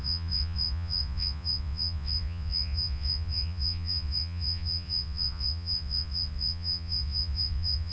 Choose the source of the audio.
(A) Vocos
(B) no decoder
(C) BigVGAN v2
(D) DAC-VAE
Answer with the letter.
A